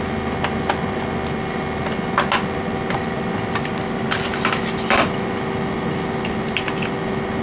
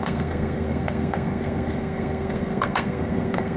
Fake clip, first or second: second